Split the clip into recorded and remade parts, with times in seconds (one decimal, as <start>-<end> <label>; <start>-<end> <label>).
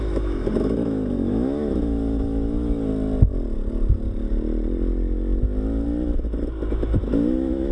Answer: 0.0-2.9 remade; 2.9-6.7 recorded; 6.7-7.7 remade